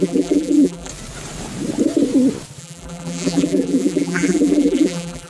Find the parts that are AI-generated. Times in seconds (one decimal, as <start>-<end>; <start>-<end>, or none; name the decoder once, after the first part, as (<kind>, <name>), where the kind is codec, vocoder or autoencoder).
0.0-0.9 (vocoder, BigVGAN v2); 2.6-5.3